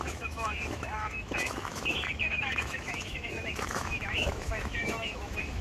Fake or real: fake